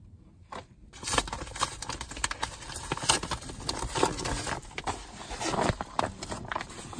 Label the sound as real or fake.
real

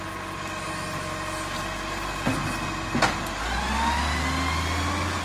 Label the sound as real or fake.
real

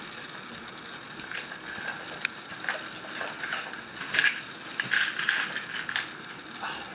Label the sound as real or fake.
real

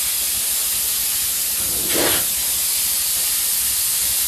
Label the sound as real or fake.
real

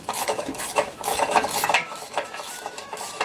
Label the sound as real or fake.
fake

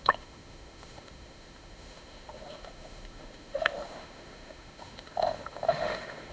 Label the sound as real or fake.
fake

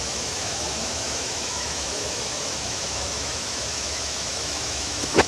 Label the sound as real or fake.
fake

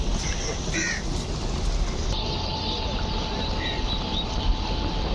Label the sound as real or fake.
real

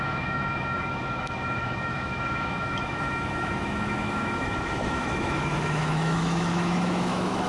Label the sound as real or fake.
fake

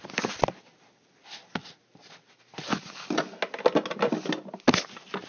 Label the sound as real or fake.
real